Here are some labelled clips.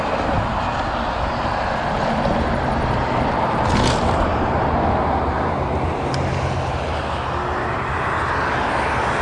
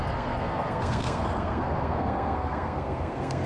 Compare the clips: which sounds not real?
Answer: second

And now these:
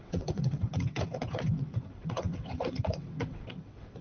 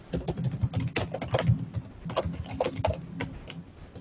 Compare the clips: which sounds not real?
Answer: first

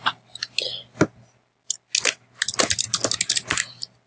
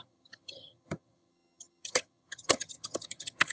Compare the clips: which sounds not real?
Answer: second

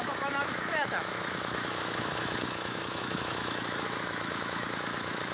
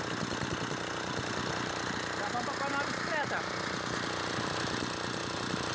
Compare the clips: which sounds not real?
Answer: first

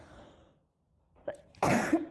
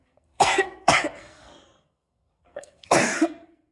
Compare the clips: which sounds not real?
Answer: second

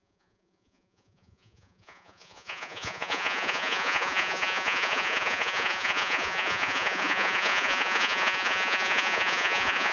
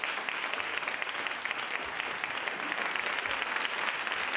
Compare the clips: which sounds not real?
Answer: first